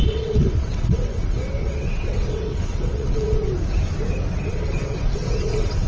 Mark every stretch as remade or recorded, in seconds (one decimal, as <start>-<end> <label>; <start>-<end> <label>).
0.0-3.5 remade; 3.5-4.5 recorded; 4.5-5.9 remade